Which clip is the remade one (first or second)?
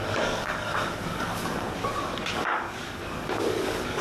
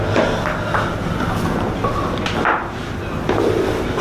first